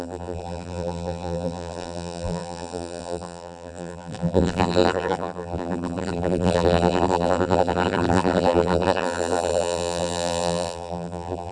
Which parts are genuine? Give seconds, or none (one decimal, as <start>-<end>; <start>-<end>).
none